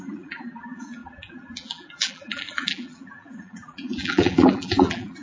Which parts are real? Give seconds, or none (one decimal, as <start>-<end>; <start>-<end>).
none